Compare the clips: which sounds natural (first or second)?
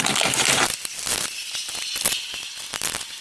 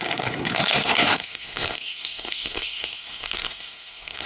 first